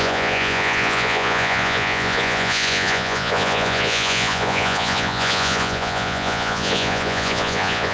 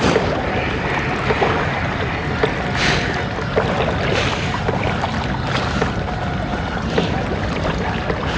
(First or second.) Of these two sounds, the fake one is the first